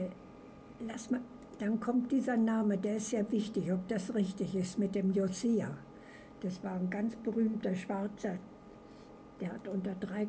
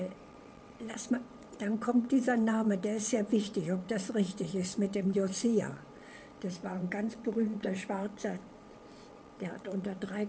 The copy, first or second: second